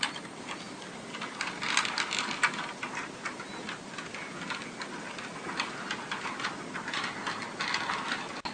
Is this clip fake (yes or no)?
no